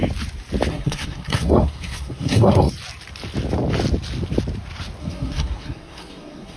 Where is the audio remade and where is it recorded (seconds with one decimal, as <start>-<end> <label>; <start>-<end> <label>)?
0.0-0.7 recorded; 0.7-2.7 remade; 2.7-5.0 recorded; 5.0-6.6 remade